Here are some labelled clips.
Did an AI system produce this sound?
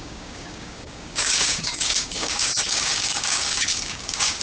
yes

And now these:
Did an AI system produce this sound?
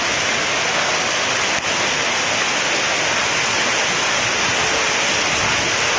no